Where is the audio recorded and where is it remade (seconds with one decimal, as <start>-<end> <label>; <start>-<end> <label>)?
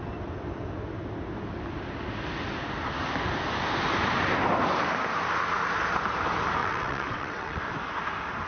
0.0-6.6 recorded; 6.6-7.6 remade; 7.6-8.5 recorded